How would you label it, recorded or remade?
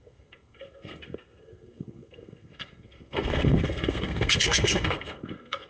remade